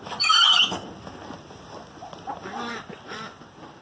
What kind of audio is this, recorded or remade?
recorded